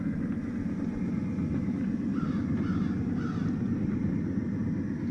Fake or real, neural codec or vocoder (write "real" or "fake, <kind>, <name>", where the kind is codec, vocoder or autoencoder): real